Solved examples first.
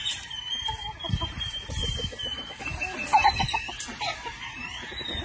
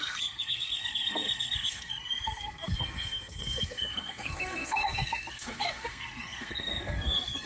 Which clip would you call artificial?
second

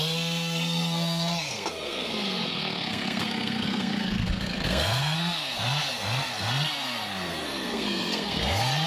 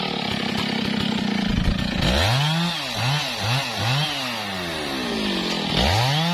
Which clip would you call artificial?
first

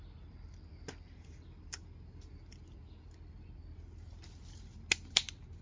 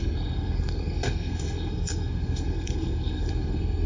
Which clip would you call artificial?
second